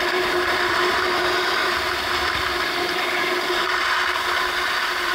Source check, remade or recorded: recorded